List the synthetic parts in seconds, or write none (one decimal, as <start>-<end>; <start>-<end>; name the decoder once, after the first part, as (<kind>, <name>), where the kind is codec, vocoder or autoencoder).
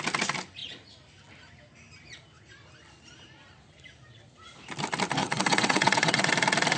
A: 5.2-6.3 (vocoder, WaveNeXt)